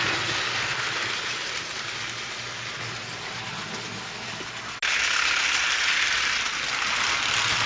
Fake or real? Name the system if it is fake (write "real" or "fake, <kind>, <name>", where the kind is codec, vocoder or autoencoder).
real